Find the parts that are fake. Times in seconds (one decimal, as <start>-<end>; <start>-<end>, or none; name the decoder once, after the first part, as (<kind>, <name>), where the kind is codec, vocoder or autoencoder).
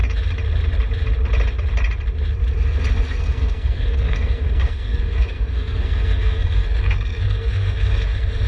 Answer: 3.2-8.5 (codec, SNAC)